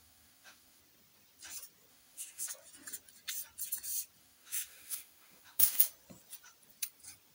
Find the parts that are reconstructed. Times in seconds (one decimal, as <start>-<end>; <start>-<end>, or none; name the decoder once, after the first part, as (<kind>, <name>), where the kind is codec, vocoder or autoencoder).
0.0-0.8 (autoencoder, DAC-VAE); 1.9-2.5; 4.2-5.9